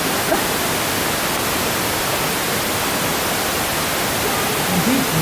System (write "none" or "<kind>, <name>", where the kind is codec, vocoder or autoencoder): none